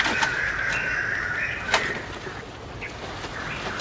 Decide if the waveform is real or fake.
real